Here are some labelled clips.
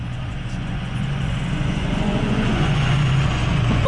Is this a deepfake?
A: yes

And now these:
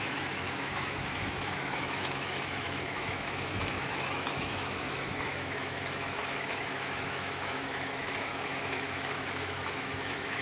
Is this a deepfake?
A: yes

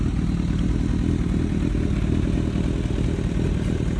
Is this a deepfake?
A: no